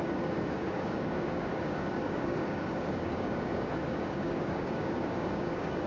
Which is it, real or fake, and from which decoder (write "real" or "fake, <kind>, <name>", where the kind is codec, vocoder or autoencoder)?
fake, codec, DAC